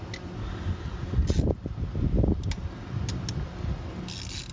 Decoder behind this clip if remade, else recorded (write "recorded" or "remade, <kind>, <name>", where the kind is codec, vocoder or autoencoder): recorded